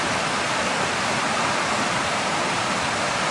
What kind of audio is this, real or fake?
real